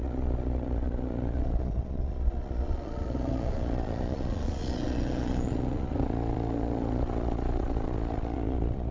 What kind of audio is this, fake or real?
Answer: fake